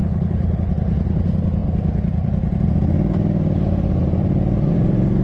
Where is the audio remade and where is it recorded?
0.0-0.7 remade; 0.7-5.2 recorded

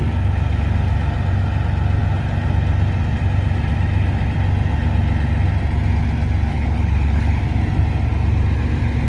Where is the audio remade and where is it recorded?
0.0-6.5 recorded; 6.5-7.4 remade; 7.4-9.1 recorded